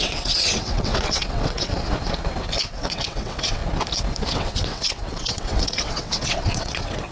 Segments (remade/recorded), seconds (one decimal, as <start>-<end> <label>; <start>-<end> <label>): 0.0-1.8 remade; 1.8-2.7 recorded; 2.7-3.6 remade; 3.6-4.3 recorded; 4.3-7.1 remade